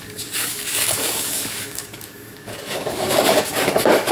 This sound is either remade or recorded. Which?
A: remade